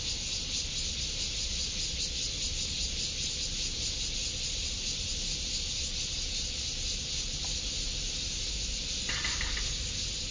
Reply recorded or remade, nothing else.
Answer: recorded